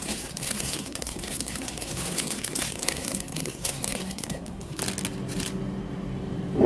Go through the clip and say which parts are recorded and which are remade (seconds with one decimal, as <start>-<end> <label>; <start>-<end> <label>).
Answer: 0.0-4.8 remade; 4.8-6.7 recorded